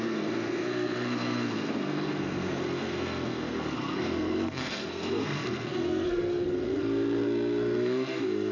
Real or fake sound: fake